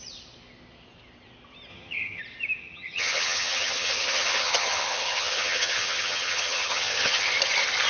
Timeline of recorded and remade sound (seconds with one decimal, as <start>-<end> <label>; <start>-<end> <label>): 0.0-1.7 recorded; 1.7-2.2 remade; 2.2-2.6 recorded; 2.6-7.3 remade; 7.3-7.9 recorded